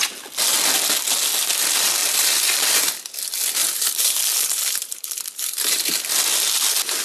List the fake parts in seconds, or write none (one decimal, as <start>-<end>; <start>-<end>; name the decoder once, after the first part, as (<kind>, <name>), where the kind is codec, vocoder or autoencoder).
2.0-3.0 (vocoder, BigVGAN v2); 3.6-5.9